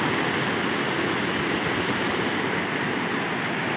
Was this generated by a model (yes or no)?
no